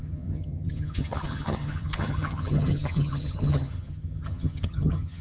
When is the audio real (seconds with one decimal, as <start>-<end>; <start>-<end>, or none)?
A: none